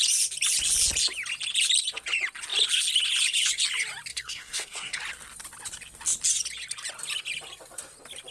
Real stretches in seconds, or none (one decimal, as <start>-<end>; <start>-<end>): 0.0-4.1; 5.0-8.3